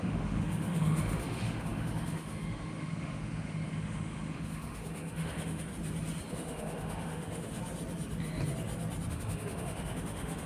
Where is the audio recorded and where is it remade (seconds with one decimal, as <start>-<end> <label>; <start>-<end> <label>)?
0.0-5.7 remade; 5.7-6.3 recorded; 6.3-7.6 remade; 7.6-9.1 recorded; 9.1-10.5 remade